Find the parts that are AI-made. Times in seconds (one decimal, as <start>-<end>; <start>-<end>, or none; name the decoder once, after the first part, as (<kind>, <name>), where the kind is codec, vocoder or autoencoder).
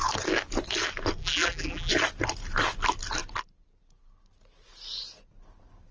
1.2-1.9 (vocoder, BigVGAN v2)